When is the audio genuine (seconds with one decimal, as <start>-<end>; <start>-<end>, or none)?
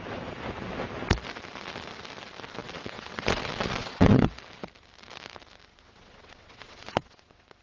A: 0.0-2.6; 4.3-5.7